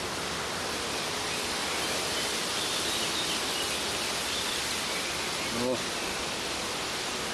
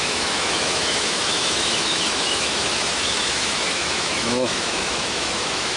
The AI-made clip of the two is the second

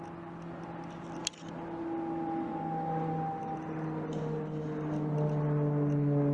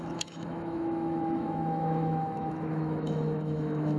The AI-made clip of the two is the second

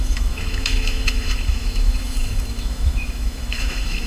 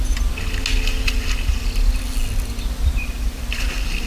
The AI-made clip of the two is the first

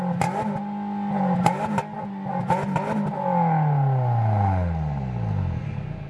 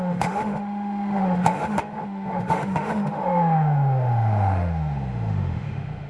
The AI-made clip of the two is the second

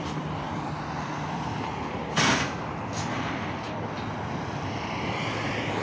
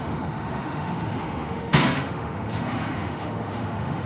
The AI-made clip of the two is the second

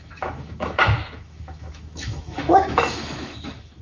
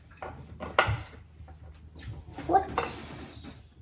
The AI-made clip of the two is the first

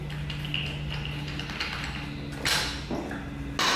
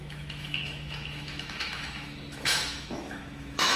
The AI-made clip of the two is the second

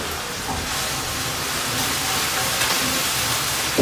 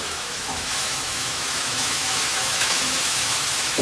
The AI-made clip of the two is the second